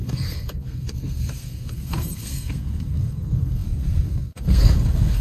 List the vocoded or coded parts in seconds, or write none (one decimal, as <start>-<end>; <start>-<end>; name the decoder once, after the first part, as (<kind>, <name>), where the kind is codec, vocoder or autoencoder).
0.0-5.2 (codec, SNAC)